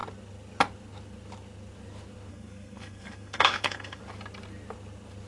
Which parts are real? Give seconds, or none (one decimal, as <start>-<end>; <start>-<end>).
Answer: 0.0-2.3; 4.0-5.3